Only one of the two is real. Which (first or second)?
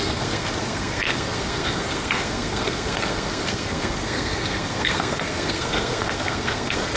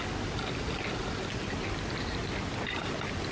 second